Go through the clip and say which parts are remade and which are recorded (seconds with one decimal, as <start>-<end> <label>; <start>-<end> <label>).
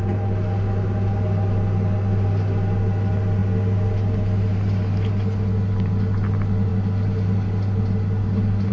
0.0-8.7 recorded